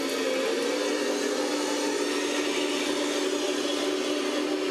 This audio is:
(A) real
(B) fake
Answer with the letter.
A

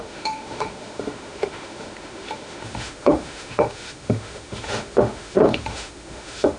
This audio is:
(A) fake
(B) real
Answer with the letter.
A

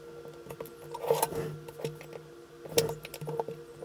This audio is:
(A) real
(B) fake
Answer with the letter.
A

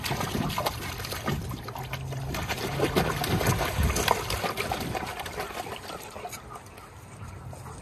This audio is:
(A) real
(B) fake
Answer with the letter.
A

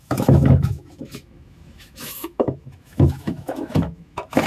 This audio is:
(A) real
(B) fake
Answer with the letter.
B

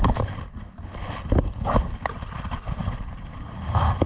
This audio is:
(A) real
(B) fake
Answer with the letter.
A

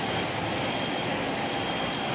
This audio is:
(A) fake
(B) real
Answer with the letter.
B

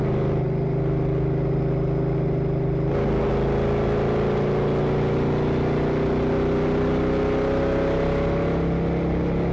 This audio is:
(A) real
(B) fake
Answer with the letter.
A